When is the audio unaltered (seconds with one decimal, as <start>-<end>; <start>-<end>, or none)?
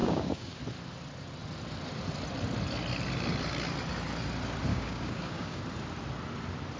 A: 0.6-4.7; 5.6-6.8